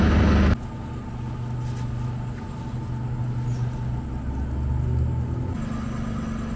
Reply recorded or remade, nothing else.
recorded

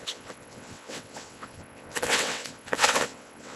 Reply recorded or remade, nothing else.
remade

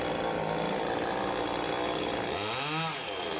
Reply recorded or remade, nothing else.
recorded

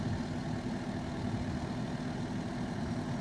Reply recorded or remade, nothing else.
recorded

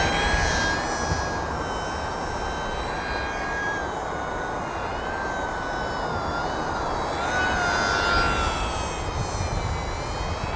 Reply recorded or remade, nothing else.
recorded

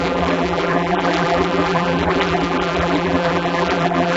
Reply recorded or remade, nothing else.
remade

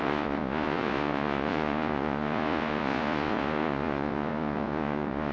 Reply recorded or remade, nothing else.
remade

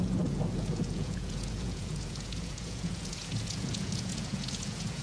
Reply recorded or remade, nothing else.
remade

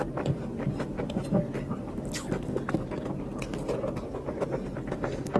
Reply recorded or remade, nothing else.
recorded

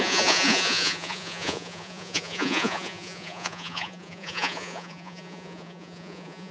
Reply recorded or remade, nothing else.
remade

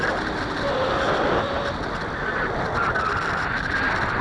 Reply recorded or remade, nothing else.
recorded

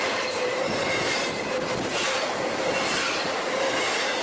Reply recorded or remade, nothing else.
recorded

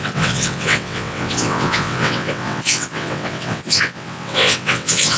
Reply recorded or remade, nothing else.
remade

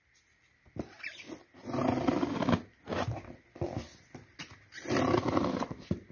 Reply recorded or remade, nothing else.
recorded